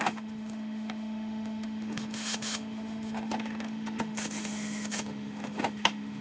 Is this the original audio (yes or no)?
no